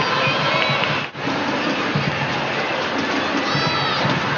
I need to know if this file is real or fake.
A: real